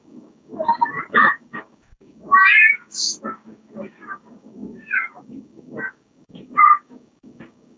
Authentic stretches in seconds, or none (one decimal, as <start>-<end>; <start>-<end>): none